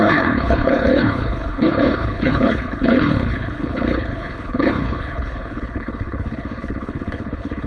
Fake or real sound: fake